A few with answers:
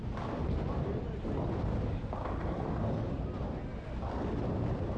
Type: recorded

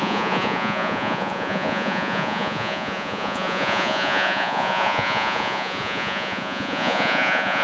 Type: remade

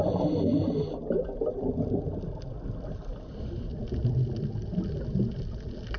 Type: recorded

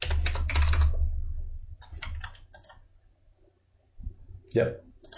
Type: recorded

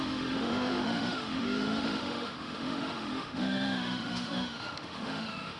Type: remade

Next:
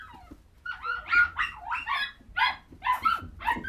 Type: recorded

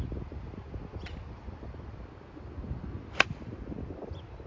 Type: recorded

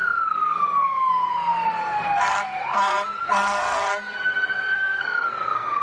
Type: remade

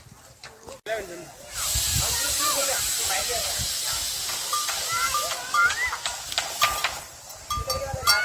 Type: recorded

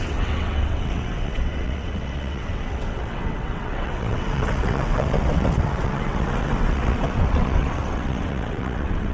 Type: remade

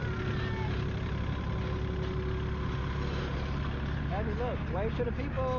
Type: recorded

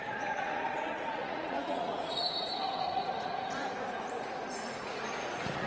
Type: remade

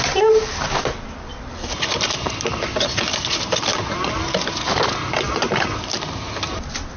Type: recorded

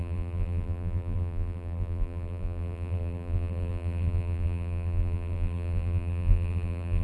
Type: remade